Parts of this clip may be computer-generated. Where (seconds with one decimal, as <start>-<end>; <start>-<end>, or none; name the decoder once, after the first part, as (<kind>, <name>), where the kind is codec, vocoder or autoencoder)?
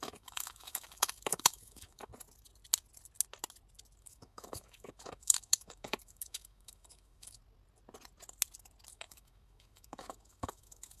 0.0-2.1 (autoencoder, DAC-VAE); 4.0-7.4; 8.9-11.0